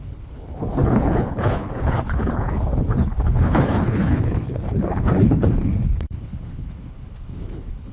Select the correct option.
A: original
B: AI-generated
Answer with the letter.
B